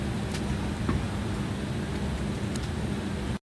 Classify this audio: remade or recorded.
recorded